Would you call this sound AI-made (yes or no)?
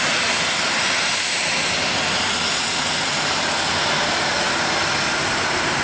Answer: no